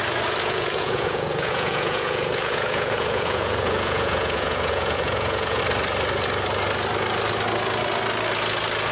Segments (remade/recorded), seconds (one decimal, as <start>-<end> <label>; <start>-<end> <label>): 0.0-0.4 recorded; 0.4-5.6 remade; 5.6-8.9 recorded